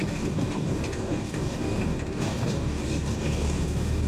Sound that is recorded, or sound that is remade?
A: remade